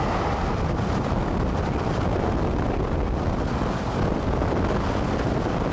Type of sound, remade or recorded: recorded